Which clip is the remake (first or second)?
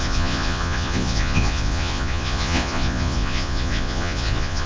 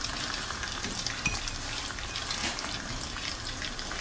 first